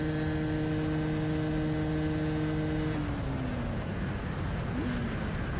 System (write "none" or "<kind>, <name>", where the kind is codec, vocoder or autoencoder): none